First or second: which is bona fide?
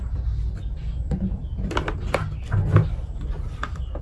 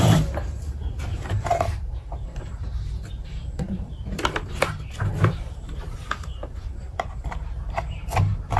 first